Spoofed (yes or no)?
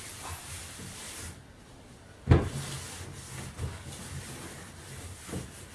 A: no